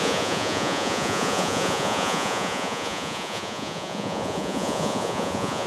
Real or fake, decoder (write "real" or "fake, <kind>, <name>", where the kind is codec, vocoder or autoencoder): fake, vocoder, Vocos